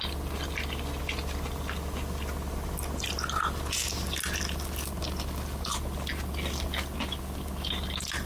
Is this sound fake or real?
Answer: real